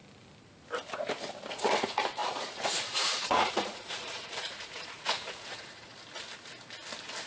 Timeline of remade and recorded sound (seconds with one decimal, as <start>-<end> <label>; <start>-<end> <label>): 0.0-1.5 recorded; 1.5-5.9 remade; 5.9-7.3 recorded